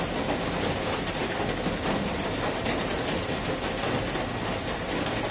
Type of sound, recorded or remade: recorded